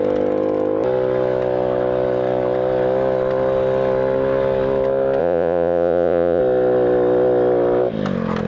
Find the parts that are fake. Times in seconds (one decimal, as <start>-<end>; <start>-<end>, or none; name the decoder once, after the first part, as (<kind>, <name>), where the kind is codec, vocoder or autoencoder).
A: 5.2-6.4 (vocoder, Vocos)